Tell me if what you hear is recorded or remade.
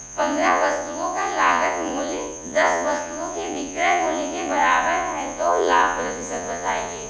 remade